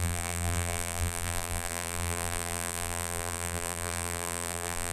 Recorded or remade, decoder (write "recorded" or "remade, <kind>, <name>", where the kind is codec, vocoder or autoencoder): remade, vocoder, BigVGAN v2